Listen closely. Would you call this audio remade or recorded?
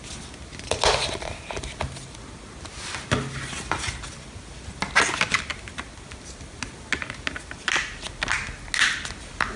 recorded